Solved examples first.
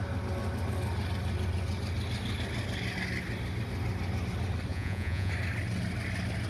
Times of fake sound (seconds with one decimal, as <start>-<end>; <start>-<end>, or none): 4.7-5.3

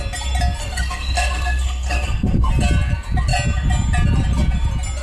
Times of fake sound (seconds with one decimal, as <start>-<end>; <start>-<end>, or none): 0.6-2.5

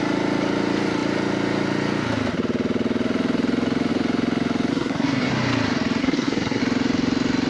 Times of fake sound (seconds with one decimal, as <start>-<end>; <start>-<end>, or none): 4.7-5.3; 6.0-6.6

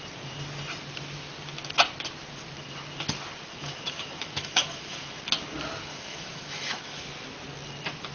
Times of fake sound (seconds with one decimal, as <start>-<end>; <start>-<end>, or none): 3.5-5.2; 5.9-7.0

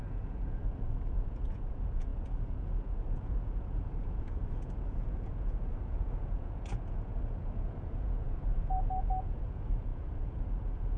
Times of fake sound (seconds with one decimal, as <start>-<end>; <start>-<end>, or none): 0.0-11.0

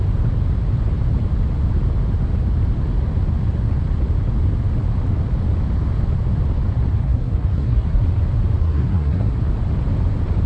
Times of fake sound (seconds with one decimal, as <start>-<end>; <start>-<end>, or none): 7.0-8.0; 8.6-9.4